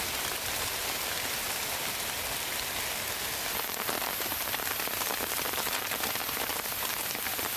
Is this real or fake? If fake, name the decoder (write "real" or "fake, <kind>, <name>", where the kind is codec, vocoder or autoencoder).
fake, vocoder, BigVGAN v2